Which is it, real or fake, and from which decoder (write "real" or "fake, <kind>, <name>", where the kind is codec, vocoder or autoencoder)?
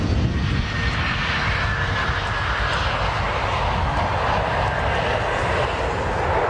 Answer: real